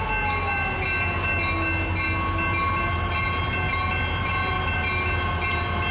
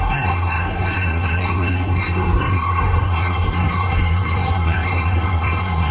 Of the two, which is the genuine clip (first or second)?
first